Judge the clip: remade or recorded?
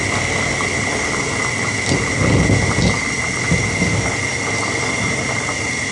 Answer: recorded